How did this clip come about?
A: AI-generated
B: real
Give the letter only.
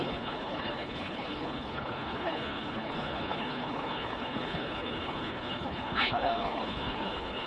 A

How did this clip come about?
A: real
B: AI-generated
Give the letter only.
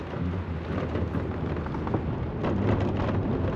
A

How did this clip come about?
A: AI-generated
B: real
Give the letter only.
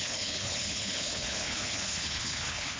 A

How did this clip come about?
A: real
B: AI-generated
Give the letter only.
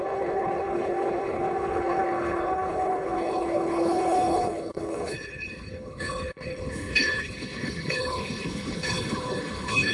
B